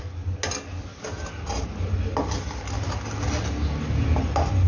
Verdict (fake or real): real